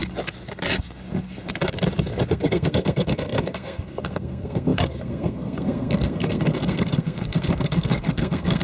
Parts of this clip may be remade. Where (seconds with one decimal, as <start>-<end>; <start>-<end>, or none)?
2.3-8.6